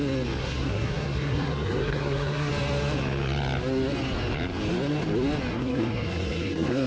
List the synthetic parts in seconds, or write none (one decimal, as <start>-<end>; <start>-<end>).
0.4-2.5; 5.5-6.9